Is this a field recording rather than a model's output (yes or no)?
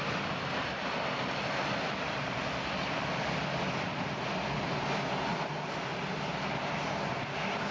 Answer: yes